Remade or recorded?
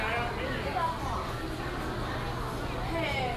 recorded